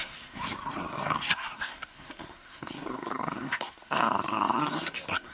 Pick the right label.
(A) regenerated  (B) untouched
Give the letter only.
A